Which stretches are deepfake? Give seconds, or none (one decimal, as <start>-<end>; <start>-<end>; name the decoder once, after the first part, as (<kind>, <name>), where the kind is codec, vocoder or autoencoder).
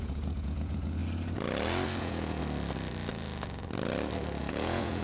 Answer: 0.0-1.0 (vocoder, Vocos); 2.0-2.4; 4.4-5.0